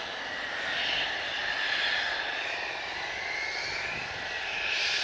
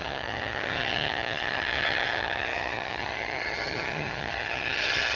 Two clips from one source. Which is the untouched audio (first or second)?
first